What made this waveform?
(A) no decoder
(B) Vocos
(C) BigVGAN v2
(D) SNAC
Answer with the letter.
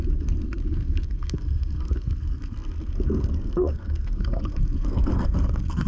D